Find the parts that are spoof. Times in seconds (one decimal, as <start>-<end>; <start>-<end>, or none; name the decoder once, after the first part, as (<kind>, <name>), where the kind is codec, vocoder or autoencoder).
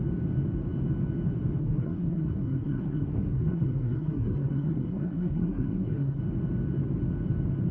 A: 1.6-6.2 (codec, SNAC)